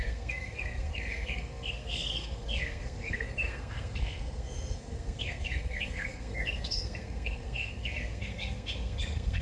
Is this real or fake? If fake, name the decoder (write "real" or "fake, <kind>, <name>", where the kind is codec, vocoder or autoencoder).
fake, codec, SNAC